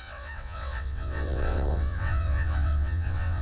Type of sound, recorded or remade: remade